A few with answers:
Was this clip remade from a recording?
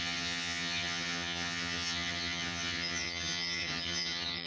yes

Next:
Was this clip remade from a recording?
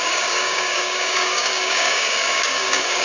yes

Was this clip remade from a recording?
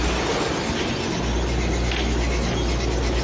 no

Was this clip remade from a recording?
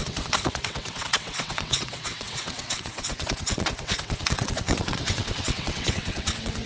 yes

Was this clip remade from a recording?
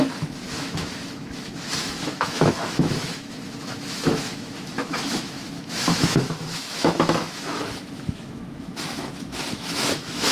yes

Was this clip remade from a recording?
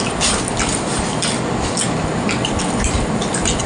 no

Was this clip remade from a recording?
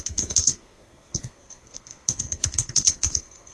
yes